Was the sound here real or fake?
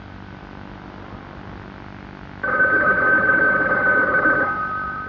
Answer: real